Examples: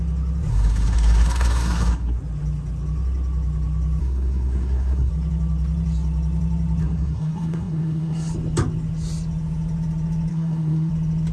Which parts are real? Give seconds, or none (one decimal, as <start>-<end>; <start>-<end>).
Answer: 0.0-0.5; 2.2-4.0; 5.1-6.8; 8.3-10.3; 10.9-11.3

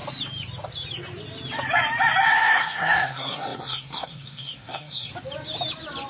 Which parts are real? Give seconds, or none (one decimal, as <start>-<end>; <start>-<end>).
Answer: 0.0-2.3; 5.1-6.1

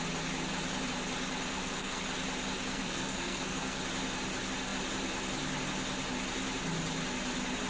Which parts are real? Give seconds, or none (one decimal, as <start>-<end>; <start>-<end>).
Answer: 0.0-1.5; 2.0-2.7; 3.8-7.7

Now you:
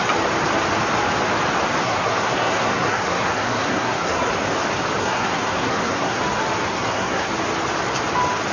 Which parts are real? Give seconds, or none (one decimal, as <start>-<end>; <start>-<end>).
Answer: 0.0-1.8; 4.3-5.0; 6.2-6.7; 7.3-8.5

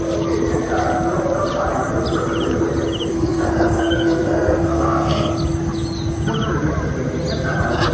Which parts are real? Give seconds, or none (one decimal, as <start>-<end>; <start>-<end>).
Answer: 0.0-3.1; 5.3-7.9